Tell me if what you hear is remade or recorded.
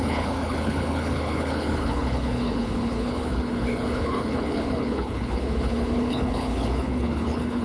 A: remade